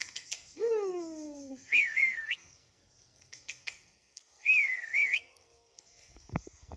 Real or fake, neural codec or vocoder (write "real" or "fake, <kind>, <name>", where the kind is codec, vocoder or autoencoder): fake, codec, SNAC